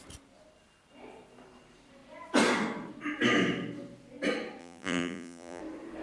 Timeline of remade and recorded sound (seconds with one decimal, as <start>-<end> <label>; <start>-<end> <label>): 0.0-4.6 recorded; 4.6-5.6 remade; 5.6-6.0 recorded